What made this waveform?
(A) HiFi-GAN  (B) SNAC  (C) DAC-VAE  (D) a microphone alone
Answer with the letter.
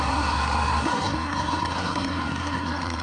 B